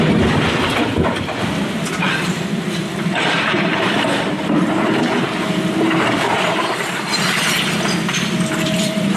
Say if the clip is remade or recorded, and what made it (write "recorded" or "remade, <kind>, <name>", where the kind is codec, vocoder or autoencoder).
remade, vocoder, BigVGAN v2